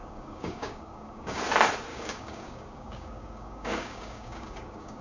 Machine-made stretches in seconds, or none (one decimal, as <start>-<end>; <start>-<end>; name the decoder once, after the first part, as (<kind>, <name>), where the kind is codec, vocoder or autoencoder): 0.0-1.4 (codec, DAC); 1.9-5.0